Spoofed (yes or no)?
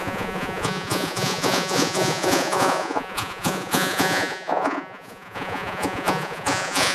yes